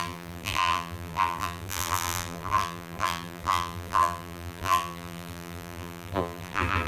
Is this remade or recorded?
remade